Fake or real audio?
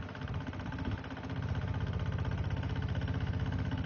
real